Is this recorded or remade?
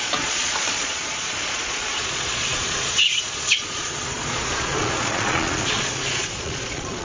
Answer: remade